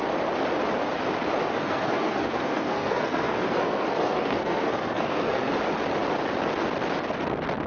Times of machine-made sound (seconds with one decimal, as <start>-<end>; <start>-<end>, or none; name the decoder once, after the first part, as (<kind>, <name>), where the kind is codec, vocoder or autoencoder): 1.5-5.5 (codec, SNAC)